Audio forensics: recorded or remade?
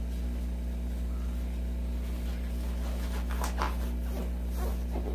recorded